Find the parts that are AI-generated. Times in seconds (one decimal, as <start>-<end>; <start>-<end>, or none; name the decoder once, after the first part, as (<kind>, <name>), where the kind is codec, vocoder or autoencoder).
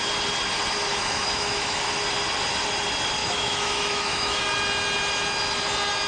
0.9-1.8 (autoencoder, DAC-VAE); 3.2-4.4